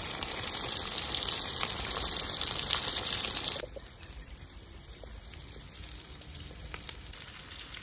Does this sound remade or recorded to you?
remade